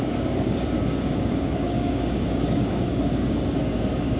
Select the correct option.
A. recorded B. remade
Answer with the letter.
B